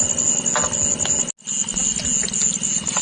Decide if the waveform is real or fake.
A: real